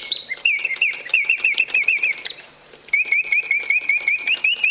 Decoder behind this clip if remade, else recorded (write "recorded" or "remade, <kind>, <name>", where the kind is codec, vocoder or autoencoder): remade, vocoder, BigVGAN v2